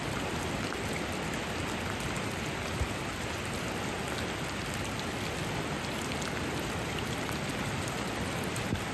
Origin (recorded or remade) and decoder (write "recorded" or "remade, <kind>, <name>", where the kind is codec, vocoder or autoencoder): recorded